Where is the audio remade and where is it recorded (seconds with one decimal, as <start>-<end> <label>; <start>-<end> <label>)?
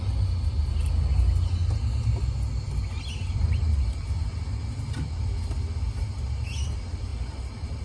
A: 0.0-7.8 recorded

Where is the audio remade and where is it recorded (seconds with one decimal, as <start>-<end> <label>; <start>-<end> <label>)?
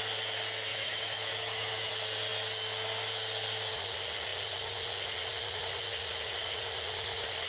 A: 0.0-0.7 recorded; 0.7-1.9 remade; 1.9-7.5 recorded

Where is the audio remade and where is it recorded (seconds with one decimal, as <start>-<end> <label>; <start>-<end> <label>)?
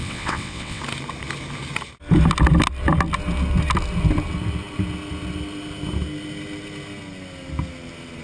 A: 0.0-0.8 remade; 0.8-8.2 recorded